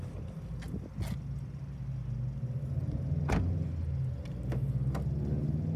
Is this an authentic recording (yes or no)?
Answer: yes